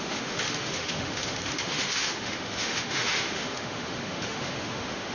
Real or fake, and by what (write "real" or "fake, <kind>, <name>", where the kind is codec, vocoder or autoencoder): fake, autoencoder, DAC-VAE